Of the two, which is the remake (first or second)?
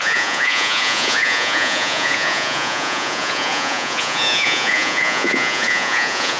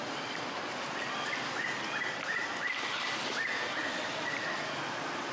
first